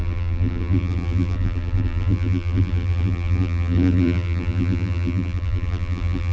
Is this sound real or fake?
fake